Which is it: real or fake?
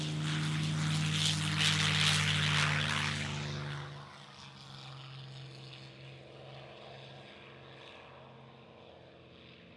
real